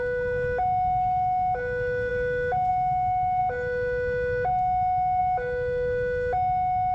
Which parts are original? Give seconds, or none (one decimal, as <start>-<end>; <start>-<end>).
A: 0.0-6.9